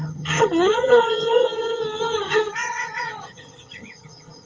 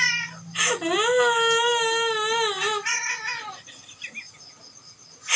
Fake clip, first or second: first